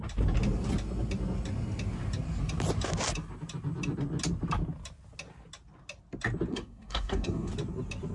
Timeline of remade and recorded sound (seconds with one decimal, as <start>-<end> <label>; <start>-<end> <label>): 0.0-6.5 recorded; 6.5-7.5 remade; 7.5-8.1 recorded